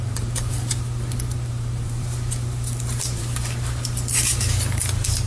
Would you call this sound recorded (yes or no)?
no